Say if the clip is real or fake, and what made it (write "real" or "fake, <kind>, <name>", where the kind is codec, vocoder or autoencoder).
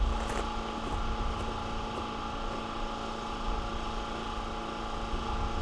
real